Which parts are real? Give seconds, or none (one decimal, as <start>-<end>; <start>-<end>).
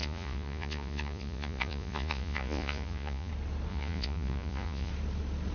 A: 3.3-3.7; 4.9-5.5